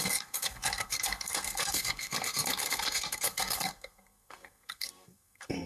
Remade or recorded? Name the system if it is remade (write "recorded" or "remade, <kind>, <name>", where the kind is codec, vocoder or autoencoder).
remade, codec, SNAC